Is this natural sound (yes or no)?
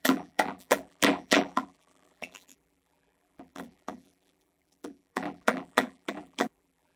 no